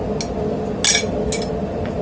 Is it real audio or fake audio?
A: real